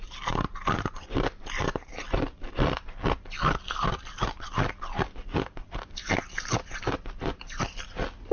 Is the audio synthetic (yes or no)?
no